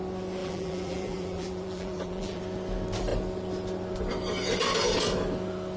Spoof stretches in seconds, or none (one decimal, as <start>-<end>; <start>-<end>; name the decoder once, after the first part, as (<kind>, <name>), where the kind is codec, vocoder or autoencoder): 0.4-2.4 (vocoder, BigVGAN v2)